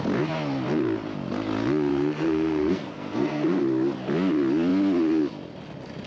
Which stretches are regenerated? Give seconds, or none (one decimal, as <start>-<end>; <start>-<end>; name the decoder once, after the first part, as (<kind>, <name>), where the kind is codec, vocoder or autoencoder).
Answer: 1.9-3.6 (codec, SNAC)